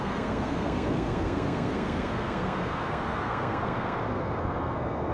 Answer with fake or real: fake